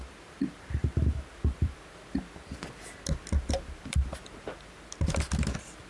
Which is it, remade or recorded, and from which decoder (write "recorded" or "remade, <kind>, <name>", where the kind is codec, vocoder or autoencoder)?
recorded